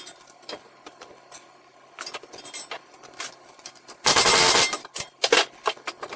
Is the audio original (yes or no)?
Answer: yes